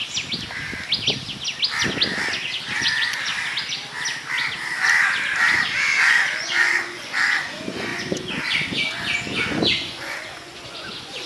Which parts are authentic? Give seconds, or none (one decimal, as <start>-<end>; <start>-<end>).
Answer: 0.0-2.8; 3.3-6.0